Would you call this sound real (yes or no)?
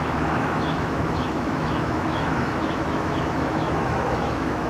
no